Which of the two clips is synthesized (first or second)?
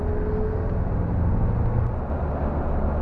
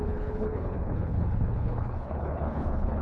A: second